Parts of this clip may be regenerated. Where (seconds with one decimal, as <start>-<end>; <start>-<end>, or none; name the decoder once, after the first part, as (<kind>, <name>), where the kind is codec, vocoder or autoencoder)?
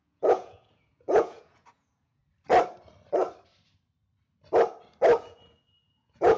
0.0-2.2 (vocoder, Vocos); 5.2-6.4